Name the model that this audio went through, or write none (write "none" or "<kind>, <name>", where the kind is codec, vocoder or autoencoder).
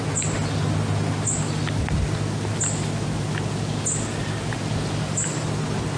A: none